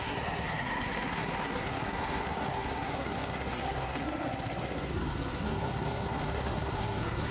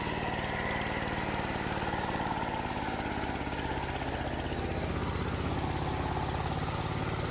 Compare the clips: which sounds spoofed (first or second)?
first